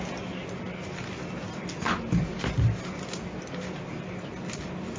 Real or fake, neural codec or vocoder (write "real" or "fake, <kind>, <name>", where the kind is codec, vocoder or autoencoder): real